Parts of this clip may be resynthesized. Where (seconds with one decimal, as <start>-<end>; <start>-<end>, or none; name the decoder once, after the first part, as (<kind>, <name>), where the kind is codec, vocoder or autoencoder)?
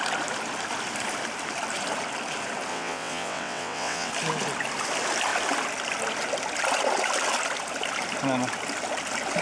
2.7-4.1 (vocoder, WaveNeXt)